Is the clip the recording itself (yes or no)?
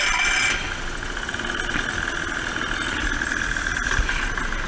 yes